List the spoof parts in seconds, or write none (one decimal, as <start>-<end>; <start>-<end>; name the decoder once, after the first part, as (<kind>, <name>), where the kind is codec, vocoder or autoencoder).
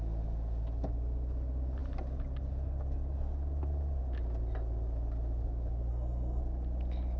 5.9-6.4 (codec, SNAC)